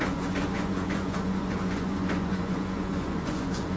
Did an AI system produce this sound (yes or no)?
yes